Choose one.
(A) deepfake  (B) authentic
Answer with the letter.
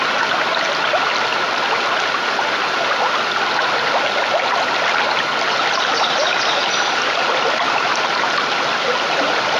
B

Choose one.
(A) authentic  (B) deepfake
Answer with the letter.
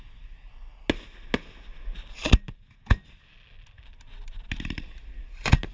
A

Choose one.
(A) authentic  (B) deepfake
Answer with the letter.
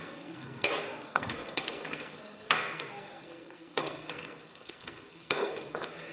B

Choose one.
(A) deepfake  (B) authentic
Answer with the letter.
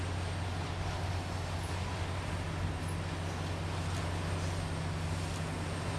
B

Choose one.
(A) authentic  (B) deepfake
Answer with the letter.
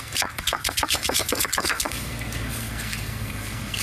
B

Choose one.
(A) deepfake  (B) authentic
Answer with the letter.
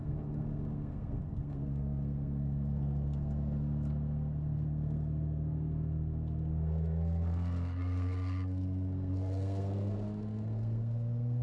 A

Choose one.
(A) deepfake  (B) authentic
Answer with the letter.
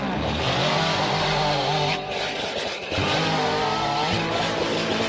B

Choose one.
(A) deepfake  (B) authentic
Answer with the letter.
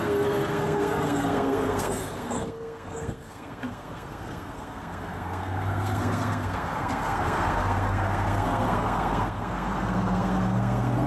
A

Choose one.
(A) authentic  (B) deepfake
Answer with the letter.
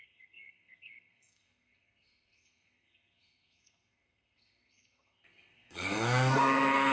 B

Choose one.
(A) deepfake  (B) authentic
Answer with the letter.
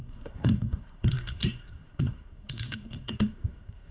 A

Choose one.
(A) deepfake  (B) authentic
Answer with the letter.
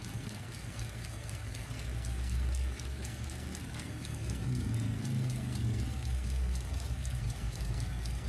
A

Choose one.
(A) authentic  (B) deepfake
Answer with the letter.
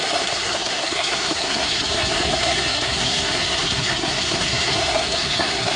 B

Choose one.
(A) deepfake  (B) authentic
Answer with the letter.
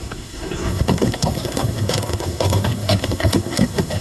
A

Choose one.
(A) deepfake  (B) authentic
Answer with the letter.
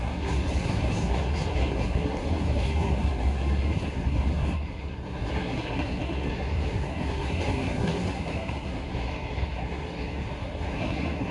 A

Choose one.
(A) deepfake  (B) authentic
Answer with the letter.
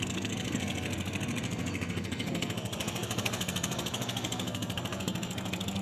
A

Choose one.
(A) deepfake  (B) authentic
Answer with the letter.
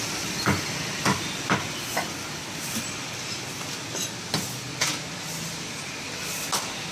B